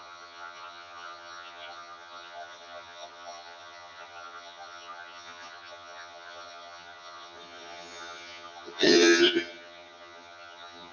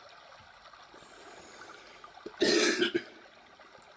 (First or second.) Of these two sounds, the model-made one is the first